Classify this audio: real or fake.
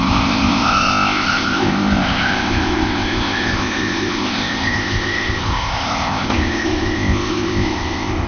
fake